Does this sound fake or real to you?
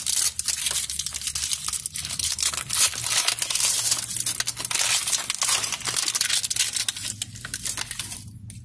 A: real